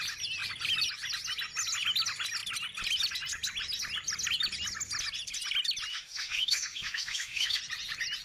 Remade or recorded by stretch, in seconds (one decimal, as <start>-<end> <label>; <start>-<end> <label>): 0.0-5.9 recorded; 5.9-7.6 remade; 7.6-8.2 recorded